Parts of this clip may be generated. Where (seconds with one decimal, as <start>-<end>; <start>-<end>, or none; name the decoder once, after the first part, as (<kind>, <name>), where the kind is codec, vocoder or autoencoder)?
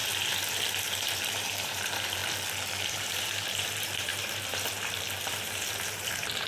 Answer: 0.8-2.2 (vocoder, BigVGAN v2); 2.9-6.5